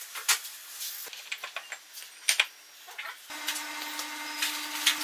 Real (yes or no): yes